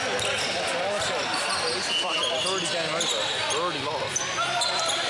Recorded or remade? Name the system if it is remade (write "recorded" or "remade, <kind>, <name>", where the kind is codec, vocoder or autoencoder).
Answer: recorded